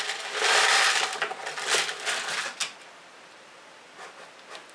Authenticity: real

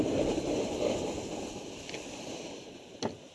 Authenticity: real